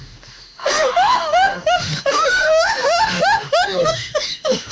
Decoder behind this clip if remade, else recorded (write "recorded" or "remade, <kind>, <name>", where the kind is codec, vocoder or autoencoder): remade, autoencoder, DAC-VAE